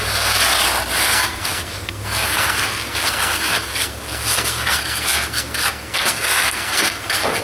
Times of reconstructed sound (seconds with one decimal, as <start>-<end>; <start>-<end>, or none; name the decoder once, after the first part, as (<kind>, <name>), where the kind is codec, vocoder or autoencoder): 0.0-0.4 (codec, SNAC); 1.0-7.4